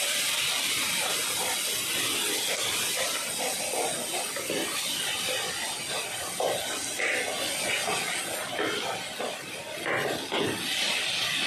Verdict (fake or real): real